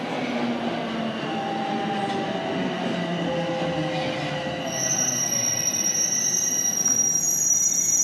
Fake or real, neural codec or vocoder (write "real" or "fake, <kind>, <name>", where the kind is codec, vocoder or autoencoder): real